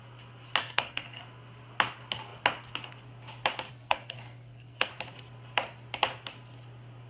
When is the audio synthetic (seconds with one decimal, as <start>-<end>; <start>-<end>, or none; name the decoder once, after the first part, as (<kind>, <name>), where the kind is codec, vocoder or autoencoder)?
0.6-1.2 (codec, SNAC); 3.7-4.9